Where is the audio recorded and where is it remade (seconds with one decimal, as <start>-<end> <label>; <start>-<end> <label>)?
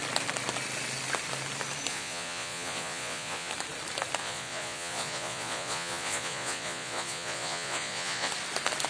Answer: 0.0-1.9 recorded; 1.9-3.5 remade; 3.5-4.2 recorded; 4.2-8.3 remade; 8.3-8.9 recorded